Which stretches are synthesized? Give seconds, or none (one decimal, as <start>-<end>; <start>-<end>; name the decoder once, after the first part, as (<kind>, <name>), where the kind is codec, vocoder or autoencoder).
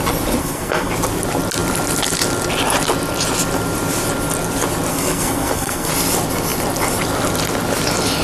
0.4-0.9 (codec, SNAC); 4.9-5.9